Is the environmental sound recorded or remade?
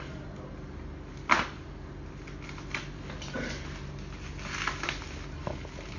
recorded